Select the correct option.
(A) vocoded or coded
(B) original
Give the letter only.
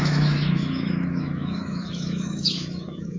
A